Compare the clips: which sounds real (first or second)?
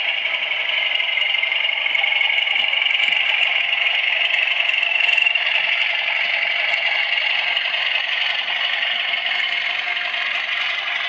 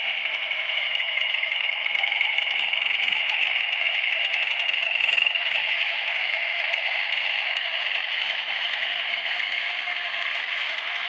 first